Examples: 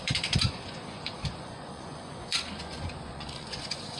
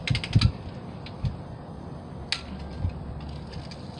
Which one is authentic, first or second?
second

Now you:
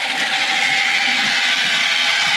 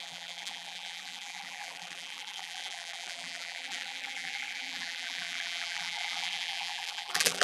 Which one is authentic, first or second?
first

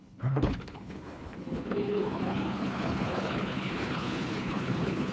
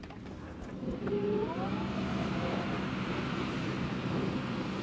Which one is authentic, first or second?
second